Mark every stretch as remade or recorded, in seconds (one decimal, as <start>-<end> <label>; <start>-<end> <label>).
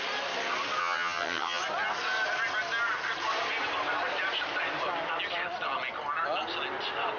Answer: 0.0-0.8 recorded; 0.8-1.6 remade; 1.6-7.2 recorded